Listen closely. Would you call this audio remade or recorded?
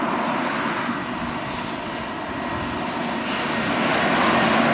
recorded